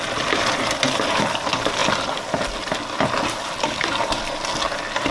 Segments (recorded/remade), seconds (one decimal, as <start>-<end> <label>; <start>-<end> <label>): 0.0-5.1 recorded